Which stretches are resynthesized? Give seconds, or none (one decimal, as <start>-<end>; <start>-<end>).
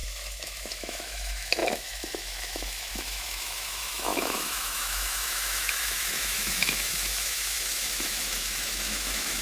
0.0-9.4